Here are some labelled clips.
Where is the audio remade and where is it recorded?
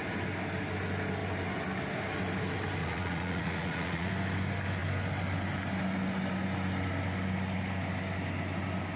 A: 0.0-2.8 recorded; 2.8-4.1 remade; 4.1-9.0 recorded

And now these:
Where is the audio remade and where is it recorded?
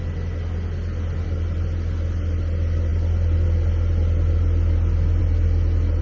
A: 0.0-6.0 recorded